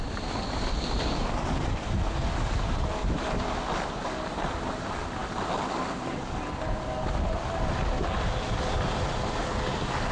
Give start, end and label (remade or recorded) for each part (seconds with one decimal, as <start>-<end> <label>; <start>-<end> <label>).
0.0-10.1 recorded